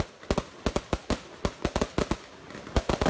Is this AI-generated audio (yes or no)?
no